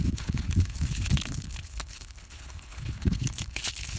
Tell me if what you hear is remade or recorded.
remade